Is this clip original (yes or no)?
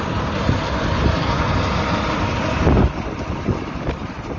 yes